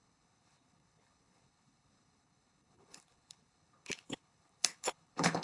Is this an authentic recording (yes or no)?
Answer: no